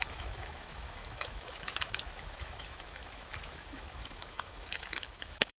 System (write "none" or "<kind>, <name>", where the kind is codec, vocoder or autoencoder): autoencoder, DAC-VAE